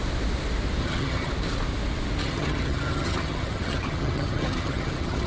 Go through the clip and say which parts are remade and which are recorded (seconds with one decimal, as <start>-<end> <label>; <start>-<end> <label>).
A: 0.0-0.8 recorded; 0.8-1.3 remade; 1.3-2.2 recorded; 2.2-5.3 remade